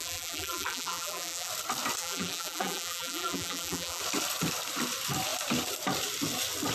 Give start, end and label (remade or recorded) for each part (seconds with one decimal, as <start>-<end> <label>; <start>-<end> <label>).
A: 0.0-1.5 remade; 1.5-2.0 recorded; 2.0-4.0 remade; 4.0-6.7 recorded